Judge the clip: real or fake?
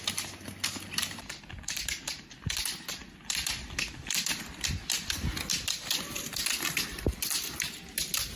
real